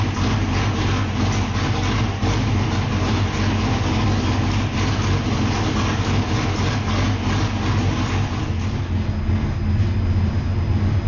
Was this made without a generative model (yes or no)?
yes